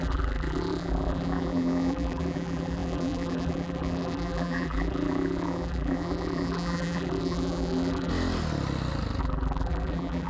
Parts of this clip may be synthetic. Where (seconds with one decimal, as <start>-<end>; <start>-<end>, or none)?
0.0-8.1; 9.2-10.3

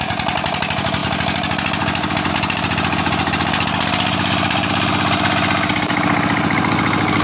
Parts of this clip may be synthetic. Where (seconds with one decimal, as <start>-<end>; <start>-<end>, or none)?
none

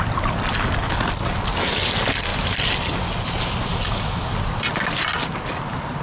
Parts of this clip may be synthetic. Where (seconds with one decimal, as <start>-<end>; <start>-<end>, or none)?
3.7-4.3

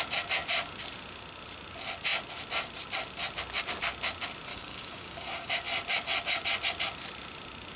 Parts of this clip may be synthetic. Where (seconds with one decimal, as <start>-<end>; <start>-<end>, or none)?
4.5-5.5

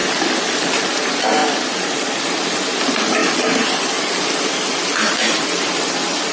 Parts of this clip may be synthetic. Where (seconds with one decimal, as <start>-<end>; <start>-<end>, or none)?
0.0-0.8; 1.4-2.2; 3.2-4.0

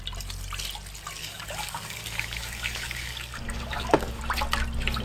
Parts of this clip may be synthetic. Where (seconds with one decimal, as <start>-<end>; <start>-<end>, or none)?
1.2-4.2

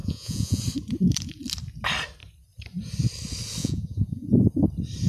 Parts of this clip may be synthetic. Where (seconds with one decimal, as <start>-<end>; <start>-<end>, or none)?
0.0-0.6; 3.6-4.3